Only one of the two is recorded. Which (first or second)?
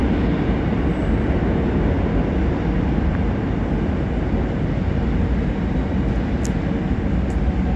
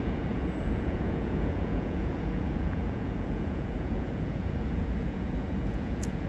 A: first